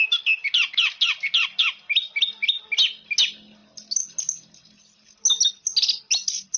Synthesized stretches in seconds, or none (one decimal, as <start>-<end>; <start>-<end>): none